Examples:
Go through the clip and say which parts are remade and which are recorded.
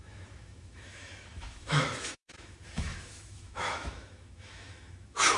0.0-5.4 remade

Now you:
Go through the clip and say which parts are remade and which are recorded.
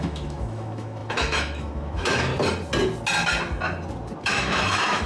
0.0-2.3 remade; 2.3-4.2 recorded; 4.2-5.1 remade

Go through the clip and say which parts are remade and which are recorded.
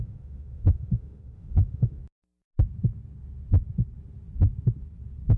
0.0-2.0 remade; 2.0-5.4 recorded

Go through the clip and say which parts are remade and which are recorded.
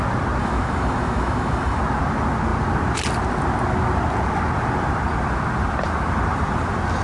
0.0-0.4 recorded; 0.4-1.8 remade; 1.8-7.0 recorded